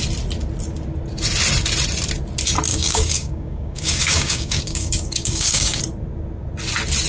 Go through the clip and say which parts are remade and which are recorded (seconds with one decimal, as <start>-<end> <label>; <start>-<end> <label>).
0.0-2.7 recorded; 2.7-5.8 remade; 5.8-7.1 recorded